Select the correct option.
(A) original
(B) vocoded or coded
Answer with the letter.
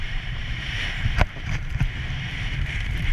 B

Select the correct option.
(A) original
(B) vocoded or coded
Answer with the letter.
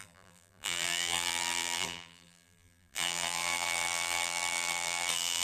B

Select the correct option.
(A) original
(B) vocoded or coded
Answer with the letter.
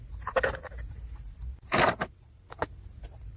B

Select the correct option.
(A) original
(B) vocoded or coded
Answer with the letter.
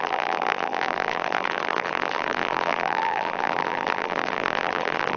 B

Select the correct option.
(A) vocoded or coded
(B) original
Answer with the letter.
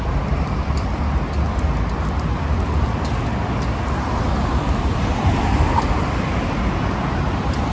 B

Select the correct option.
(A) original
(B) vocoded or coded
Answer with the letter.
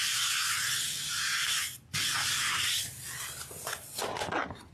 A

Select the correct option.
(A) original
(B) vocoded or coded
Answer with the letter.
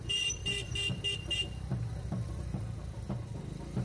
B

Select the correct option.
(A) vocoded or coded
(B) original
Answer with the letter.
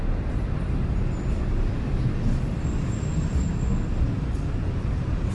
B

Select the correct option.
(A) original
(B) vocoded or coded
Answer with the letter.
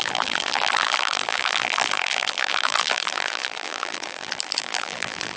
B